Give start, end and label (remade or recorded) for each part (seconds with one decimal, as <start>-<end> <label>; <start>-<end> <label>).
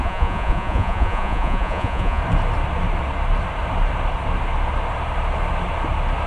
0.0-2.2 remade; 2.2-6.3 recorded